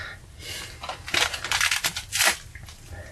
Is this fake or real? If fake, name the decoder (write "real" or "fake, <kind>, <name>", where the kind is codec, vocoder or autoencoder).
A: real